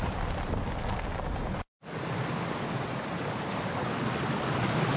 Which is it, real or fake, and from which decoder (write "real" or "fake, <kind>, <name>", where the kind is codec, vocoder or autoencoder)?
real